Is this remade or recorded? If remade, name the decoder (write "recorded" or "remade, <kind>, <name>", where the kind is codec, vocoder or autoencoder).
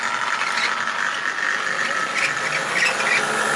recorded